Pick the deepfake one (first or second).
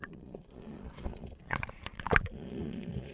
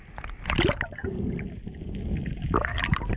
first